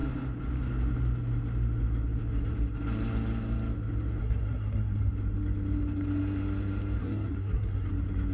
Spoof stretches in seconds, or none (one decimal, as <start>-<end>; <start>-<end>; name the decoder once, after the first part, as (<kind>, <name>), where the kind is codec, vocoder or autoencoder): 4.2-5.1 (codec, SNAC); 7.0-7.9

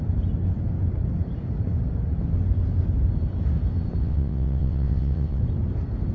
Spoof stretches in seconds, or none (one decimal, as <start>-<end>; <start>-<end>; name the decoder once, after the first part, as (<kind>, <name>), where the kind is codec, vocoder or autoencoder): 4.0-5.4 (vocoder, WaveNeXt)

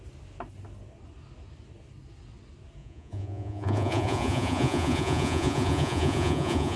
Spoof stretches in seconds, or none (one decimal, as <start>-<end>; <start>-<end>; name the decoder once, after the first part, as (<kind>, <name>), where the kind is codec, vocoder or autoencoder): 2.8-6.8 (vocoder, Vocos)

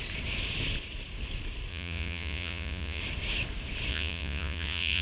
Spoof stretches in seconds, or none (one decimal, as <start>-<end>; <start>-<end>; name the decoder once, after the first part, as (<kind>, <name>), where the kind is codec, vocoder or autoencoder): 1.7-3.0 (vocoder, Vocos); 3.9-5.0

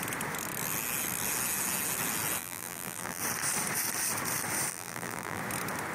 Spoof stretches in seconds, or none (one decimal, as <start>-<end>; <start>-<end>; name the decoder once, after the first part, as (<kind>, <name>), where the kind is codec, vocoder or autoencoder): 2.4-3.2 (vocoder, BigVGAN v2); 4.7-5.4